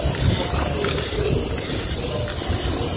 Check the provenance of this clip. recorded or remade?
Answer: recorded